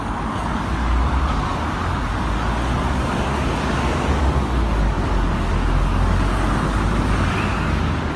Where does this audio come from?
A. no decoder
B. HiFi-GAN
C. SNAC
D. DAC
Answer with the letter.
D